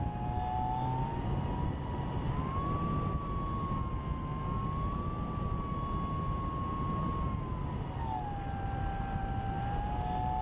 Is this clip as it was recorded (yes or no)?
yes